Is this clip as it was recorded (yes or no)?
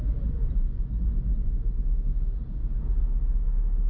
yes